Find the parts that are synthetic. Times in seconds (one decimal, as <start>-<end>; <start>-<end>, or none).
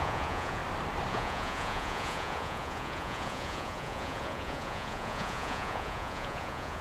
0.0-0.6; 1.1-6.8